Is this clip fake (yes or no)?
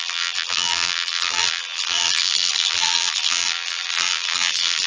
yes